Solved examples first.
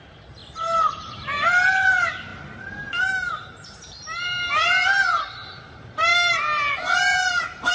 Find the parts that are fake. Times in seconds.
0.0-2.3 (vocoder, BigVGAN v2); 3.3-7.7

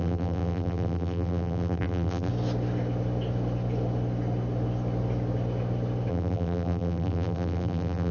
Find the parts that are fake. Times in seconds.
0.0-2.3 (vocoder, BigVGAN v2); 6.1-8.1